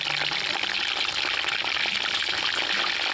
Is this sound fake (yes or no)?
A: no